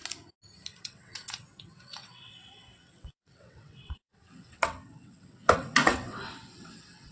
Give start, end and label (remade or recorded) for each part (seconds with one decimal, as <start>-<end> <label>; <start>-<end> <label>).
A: 0.0-0.8 recorded; 0.8-7.1 remade